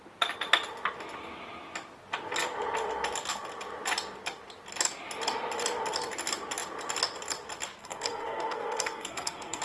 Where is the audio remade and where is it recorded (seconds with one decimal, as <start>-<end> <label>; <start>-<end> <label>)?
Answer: 0.0-7.8 recorded; 7.8-9.6 remade